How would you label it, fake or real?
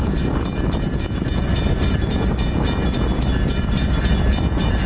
real